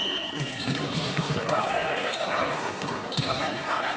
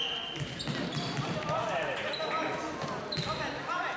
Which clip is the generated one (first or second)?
first